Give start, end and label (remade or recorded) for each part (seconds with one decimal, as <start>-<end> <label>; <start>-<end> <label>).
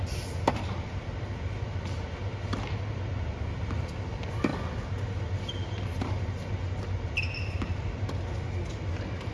0.0-9.3 recorded